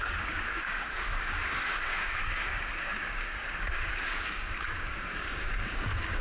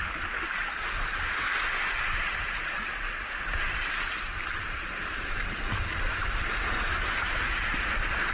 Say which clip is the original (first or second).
second